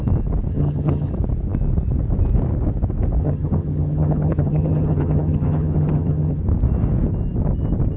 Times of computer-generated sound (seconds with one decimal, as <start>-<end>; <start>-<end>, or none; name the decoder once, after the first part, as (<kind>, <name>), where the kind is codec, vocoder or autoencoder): 0.5-1.1 (vocoder, HiFi-GAN); 3.2-6.4